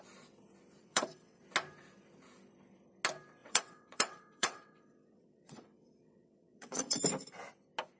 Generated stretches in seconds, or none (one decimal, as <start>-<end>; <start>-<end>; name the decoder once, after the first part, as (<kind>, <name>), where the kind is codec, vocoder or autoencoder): 0.8-1.4 (vocoder, WaveNeXt); 3.4-7.0